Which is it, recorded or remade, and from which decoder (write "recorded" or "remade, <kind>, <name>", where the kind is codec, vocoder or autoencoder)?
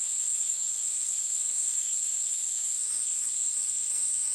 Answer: remade, codec, SNAC